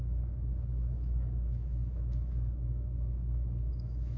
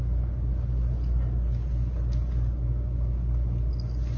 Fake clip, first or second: first